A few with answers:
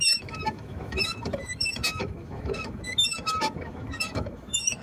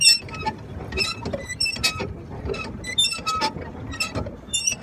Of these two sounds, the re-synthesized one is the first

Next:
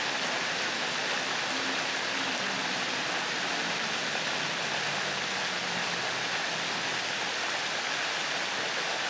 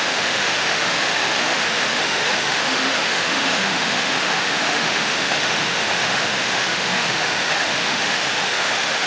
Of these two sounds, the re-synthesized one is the second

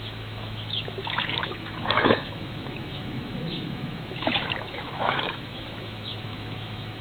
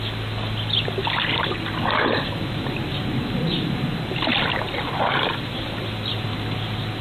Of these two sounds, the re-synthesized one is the first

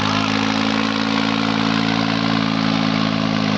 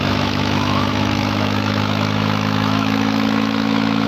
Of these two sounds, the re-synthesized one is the second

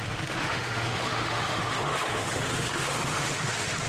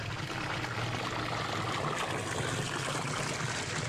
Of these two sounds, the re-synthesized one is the first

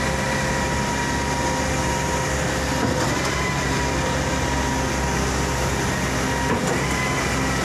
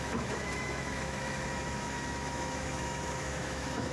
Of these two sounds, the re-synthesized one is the second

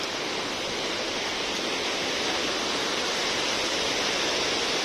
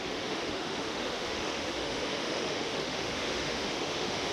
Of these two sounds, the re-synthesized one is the second